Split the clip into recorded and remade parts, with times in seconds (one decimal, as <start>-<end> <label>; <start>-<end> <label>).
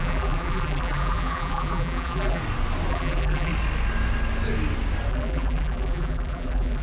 0.0-2.4 remade; 2.4-2.9 recorded; 2.9-3.5 remade; 3.5-5.1 recorded; 5.1-6.8 remade